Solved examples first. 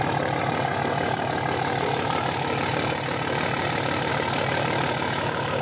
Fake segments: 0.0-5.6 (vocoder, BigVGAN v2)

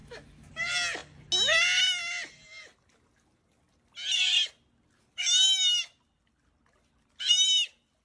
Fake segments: 0.0-0.5 (autoencoder, DAC-VAE)

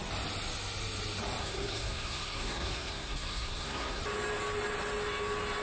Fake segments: 1.4-4.0 (codec, SNAC)

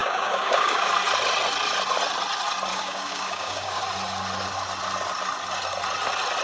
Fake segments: 0.0-0.9 (codec, DAC); 2.7-3.8

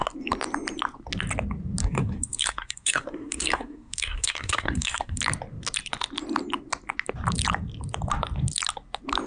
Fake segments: 1.8-5.2 (codec, SNAC)